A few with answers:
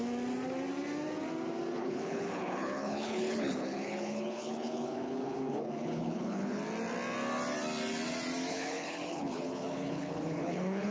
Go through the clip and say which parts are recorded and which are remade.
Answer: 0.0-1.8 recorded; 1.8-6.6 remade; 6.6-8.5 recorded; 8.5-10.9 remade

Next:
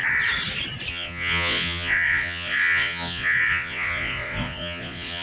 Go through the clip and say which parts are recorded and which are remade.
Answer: 0.0-0.9 recorded; 0.9-5.2 remade